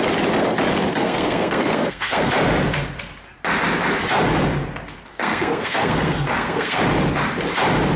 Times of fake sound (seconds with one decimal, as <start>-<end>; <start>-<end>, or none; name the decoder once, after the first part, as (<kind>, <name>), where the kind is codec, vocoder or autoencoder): 0.9-2.3 (codec, SNAC); 5.1-6.8